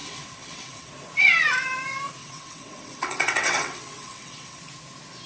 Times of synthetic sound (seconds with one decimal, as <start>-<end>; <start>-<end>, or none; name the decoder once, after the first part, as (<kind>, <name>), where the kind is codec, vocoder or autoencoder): 0.0-0.9 (vocoder, WaveNeXt); 2.2-4.6

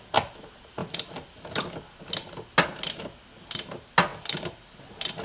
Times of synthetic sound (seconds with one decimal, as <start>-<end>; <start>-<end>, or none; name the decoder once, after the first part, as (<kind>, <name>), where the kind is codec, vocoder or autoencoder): none

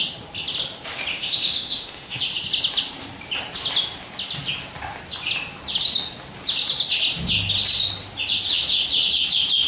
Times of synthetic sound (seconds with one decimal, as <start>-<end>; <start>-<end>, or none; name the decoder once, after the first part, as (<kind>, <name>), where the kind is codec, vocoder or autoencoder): 1.1-2.2 (autoencoder, DAC-VAE)

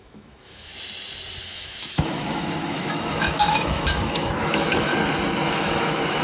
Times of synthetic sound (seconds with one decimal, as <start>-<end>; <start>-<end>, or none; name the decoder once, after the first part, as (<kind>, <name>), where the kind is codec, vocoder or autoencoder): 0.0-0.7 (autoencoder, DAC-VAE); 1.4-4.9; 5.5-6.2

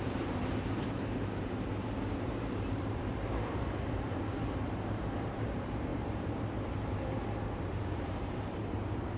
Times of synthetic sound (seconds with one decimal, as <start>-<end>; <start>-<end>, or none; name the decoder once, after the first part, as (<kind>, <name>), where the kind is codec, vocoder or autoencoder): 0.0-9.2 (vocoder, BigVGAN v2)

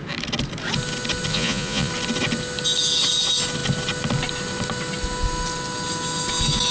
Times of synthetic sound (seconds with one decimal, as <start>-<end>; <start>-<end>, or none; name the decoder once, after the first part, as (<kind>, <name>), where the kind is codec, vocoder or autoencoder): 1.3-1.9 (vocoder, Vocos)